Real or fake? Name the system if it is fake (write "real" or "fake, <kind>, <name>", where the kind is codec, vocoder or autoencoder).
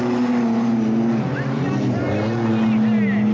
real